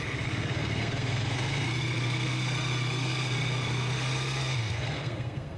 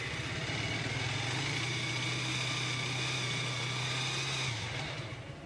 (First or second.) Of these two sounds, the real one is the second